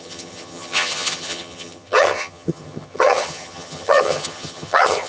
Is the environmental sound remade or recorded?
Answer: remade